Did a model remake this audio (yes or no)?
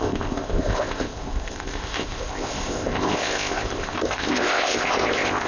yes